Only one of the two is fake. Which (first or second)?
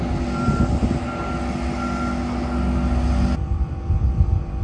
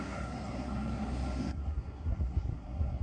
second